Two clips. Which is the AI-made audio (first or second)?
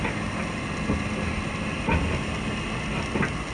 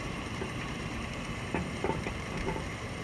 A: second